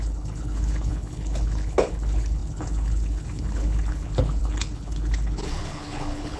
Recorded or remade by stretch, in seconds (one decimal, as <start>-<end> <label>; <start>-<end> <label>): 0.0-6.4 remade